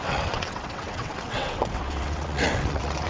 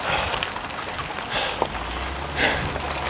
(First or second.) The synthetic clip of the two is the first